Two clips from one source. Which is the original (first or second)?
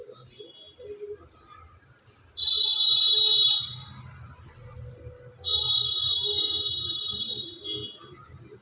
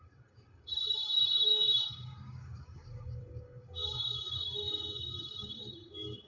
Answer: first